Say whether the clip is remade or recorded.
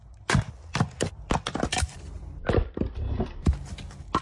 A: recorded